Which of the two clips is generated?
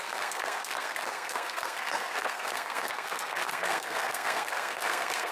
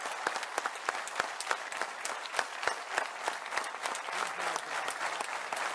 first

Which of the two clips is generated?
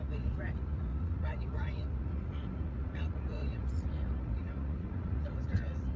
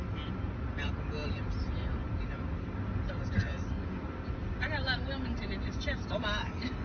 first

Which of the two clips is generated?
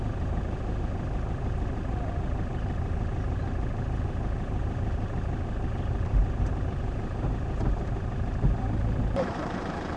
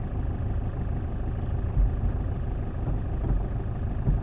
first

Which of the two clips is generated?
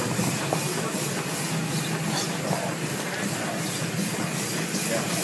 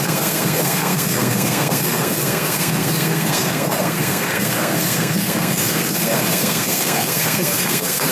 second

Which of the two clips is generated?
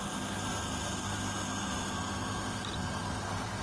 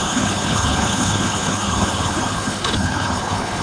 second